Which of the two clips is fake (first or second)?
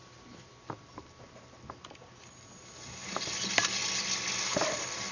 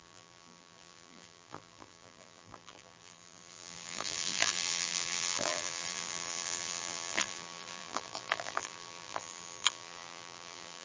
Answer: second